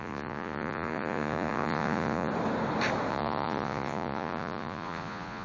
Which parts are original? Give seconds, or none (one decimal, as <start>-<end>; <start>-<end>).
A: 2.3-3.1